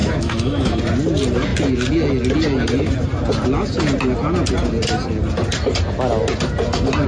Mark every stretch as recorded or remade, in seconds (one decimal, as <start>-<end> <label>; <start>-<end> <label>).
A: 0.0-0.8 remade; 0.8-7.1 recorded